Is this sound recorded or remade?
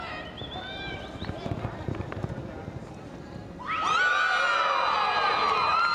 recorded